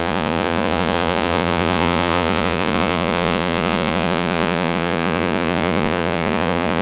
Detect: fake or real fake